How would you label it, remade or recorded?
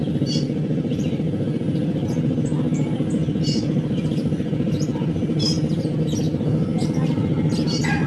recorded